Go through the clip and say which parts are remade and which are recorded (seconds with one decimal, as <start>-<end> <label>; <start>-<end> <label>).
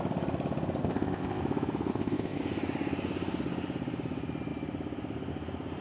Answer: 0.0-0.8 recorded; 0.8-1.4 remade; 1.4-1.9 recorded; 1.9-2.4 remade; 2.4-5.8 recorded